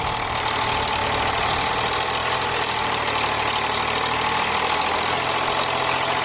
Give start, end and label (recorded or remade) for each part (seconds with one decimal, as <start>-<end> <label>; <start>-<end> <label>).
0.0-6.2 recorded

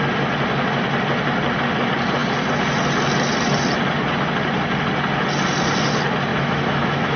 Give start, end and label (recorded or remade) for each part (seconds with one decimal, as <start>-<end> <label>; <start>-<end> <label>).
0.0-6.3 recorded; 6.3-7.2 remade